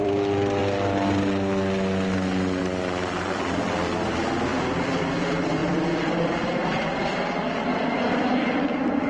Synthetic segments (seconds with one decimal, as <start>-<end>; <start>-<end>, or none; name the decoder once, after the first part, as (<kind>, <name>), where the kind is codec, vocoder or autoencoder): 0.0-0.6 (vocoder, BigVGAN v2); 2.6-9.1